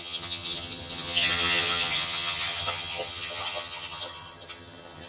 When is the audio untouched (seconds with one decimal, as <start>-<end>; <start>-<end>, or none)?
none